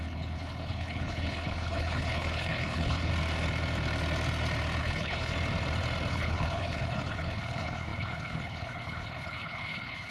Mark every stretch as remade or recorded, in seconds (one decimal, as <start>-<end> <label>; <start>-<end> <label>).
0.0-3.1 remade; 3.1-4.8 recorded; 4.8-5.3 remade; 5.3-6.1 recorded; 6.1-10.1 remade